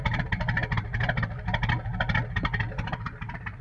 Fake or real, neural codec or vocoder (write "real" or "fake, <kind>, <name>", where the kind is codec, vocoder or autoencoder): real